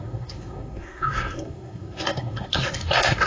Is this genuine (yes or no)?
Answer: no